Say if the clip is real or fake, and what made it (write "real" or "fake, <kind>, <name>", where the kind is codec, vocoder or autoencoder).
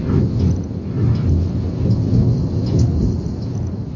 real